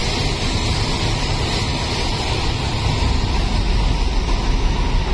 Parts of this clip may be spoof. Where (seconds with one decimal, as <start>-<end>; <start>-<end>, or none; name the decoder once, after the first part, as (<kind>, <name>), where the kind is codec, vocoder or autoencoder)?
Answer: none